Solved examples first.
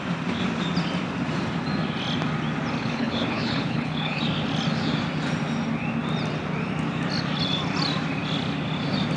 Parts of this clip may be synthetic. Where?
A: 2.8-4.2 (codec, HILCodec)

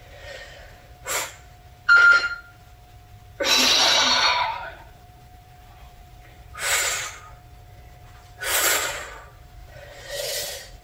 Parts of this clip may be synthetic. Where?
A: 3.8-6.9 (vocoder, BigVGAN v2); 9.6-10.2

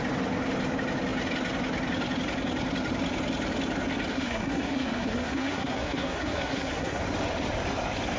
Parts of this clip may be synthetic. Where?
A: 4.1-7.0 (codec, SNAC)

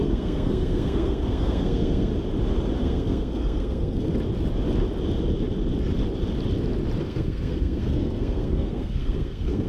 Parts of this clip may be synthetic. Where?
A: 0.0-2.1 (codec, SNAC); 2.8-4.1; 7.0-9.7

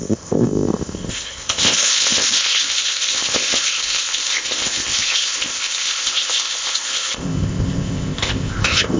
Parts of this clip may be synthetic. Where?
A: 0.0-9.0 (codec, ZipCodec)